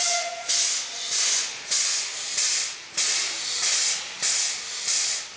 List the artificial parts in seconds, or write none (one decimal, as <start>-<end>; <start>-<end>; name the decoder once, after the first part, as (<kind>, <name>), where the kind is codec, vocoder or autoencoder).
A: 0.0-2.1 (vocoder, Vocos)